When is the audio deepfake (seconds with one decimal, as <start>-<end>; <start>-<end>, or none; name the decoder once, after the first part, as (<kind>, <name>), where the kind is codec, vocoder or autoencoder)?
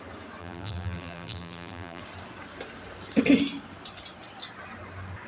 0.4-2.0 (vocoder, BigVGAN v2)